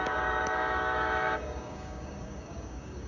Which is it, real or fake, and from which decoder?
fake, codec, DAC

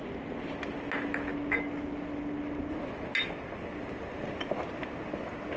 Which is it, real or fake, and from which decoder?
real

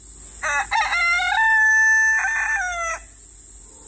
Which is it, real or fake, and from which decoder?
real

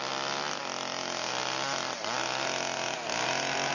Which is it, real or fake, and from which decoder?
real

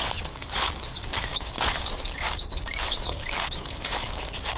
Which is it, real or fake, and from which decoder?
fake, codec, DAC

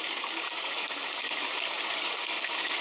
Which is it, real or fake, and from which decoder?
fake, codec, DAC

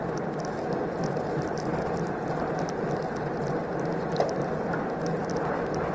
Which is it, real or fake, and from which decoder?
real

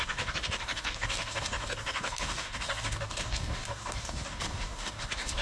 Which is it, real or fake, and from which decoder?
fake, codec, DAC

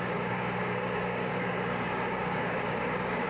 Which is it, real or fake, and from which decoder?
fake, codec, DAC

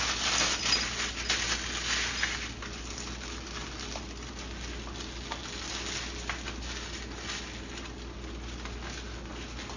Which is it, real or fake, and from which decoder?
real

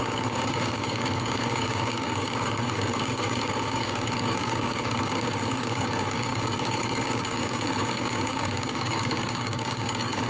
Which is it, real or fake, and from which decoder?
fake, codec, DAC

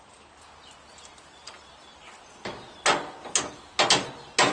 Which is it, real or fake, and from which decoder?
real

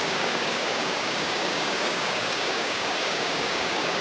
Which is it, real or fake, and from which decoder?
fake, codec, DAC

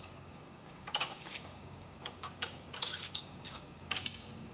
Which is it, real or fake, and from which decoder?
fake, codec, DAC